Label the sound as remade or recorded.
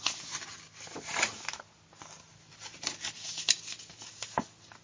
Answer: recorded